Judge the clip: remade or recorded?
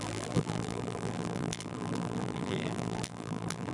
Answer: remade